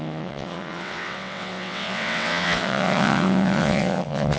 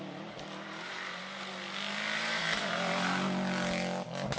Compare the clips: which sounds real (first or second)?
second